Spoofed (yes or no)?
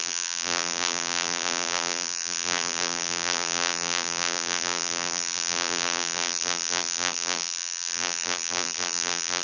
yes